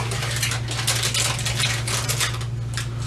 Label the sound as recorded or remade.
recorded